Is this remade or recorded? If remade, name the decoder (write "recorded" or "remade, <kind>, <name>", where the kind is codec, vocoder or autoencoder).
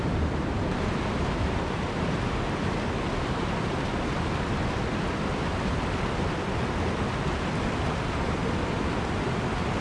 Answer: recorded